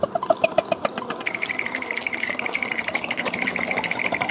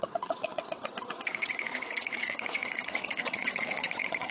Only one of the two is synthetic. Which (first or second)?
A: second